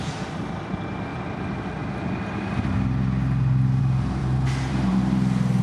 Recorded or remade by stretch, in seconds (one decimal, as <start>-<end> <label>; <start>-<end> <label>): 0.0-4.2 recorded; 4.2-5.0 remade; 5.0-5.6 recorded